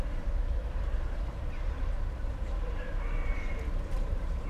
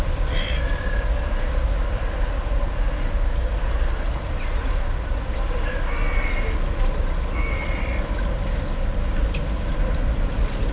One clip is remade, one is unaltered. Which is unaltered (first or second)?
second